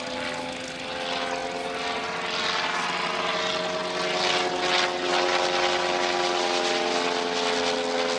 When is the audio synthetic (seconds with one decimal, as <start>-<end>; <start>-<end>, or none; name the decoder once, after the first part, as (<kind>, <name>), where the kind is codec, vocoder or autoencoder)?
none